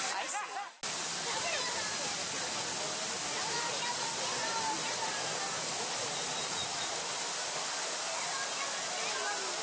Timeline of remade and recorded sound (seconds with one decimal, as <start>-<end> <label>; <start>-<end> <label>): 0.0-9.6 recorded

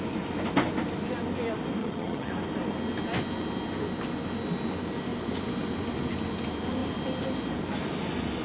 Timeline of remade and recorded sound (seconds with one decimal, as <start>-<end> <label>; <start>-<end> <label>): 0.0-1.8 recorded; 1.8-2.3 remade; 2.3-8.4 recorded

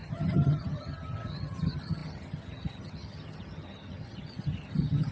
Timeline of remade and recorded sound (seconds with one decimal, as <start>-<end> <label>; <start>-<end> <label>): 0.0-5.1 remade

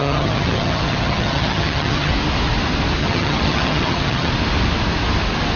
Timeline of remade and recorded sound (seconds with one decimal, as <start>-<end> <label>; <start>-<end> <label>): 0.0-2.1 remade; 2.1-3.0 recorded; 3.0-4.3 remade; 4.3-5.6 recorded

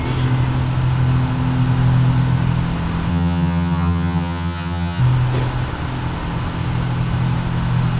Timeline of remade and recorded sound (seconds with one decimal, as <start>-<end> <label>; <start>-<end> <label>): 0.0-3.1 recorded; 3.1-5.0 remade; 5.0-8.0 recorded

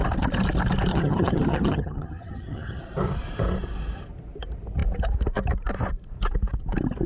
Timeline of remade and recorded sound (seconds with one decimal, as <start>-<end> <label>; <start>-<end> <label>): 0.0-0.9 recorded; 0.9-2.8 remade; 2.8-7.1 recorded